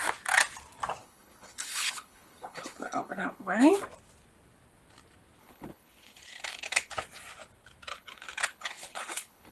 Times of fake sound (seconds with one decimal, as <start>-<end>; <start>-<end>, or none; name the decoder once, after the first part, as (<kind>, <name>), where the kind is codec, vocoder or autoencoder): 1.0-3.7 (codec, HILCodec); 5.4-6.9; 7.9-9.5